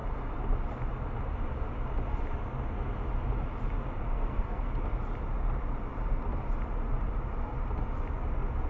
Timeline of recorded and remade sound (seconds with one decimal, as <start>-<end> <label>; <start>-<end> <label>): 0.0-4.0 recorded; 4.0-4.7 remade; 4.7-8.7 recorded